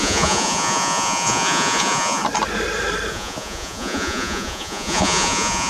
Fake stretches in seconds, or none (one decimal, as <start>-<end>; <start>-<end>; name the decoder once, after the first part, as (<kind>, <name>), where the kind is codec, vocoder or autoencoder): 0.0-2.2 (vocoder, Vocos); 3.1-5.7